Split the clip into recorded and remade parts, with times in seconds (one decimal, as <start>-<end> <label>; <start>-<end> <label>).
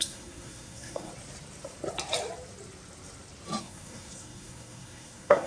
0.0-1.1 remade; 1.1-3.6 recorded; 3.6-5.5 remade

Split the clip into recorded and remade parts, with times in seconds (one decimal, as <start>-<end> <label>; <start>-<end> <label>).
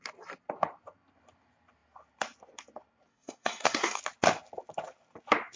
0.0-3.1 recorded; 3.1-4.0 remade; 4.0-5.6 recorded